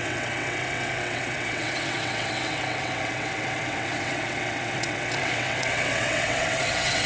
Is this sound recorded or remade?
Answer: remade